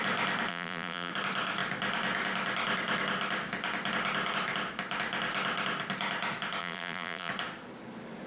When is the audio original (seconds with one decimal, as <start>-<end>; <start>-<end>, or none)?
0.0-0.5; 1.1-6.6; 7.3-8.3